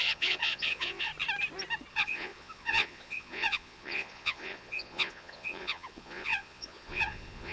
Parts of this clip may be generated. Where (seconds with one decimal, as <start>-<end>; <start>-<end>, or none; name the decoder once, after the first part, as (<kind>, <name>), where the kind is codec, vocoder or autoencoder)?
0.0-1.1 (vocoder, Vocos); 1.9-7.5